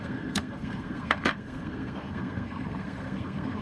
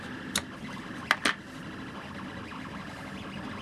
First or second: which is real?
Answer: second